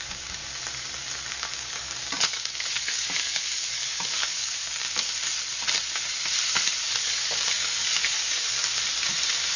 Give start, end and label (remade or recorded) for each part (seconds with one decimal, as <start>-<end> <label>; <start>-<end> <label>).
0.0-0.4 remade; 0.4-1.3 recorded; 1.3-5.1 remade; 5.1-6.8 recorded; 6.8-8.6 remade; 8.6-9.6 recorded